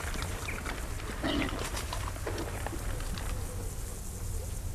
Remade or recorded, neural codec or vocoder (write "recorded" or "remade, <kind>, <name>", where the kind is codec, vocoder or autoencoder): recorded